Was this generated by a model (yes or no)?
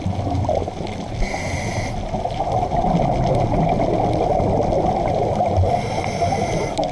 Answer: no